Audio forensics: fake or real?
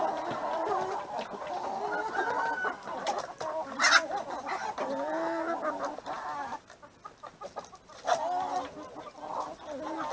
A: real